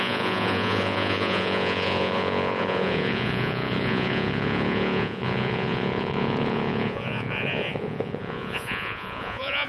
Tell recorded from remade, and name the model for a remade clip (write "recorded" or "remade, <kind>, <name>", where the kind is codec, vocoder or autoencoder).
remade, vocoder, Vocos